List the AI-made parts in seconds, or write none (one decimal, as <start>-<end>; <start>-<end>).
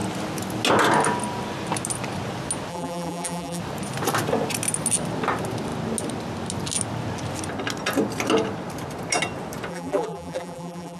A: 2.7-3.6; 9.7-11.0